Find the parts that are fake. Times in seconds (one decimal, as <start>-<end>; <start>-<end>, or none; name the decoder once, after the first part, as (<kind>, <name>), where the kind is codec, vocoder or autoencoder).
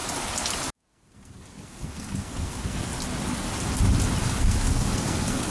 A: 0.7-2.9 (codec, SNAC); 4.2-5.5